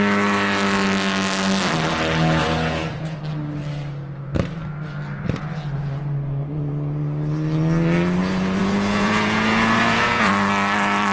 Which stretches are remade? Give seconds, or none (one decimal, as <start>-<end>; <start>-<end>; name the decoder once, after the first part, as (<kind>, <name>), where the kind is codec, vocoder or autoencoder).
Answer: 2.4-3.2 (vocoder, Vocos); 8.2-10.3